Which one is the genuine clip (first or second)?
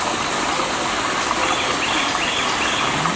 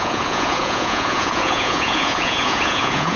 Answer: first